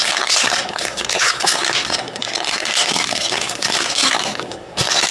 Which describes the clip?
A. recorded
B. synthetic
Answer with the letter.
B